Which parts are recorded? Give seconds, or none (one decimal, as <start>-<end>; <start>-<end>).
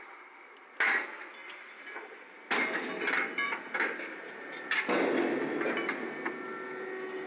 0.0-7.3